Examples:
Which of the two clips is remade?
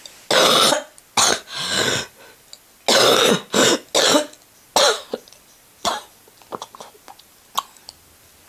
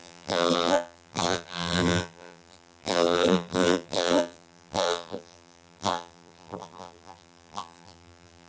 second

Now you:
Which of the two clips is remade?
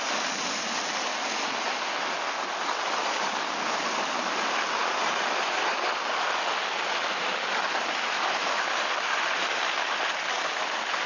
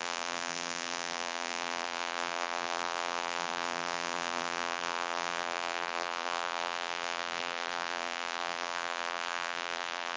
second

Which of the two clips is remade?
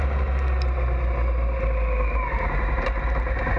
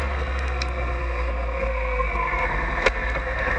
second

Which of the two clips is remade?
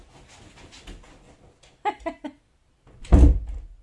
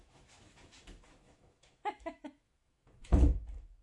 second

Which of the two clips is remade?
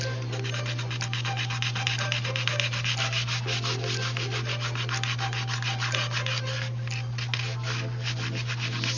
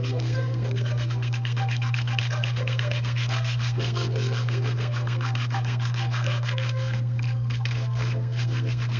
second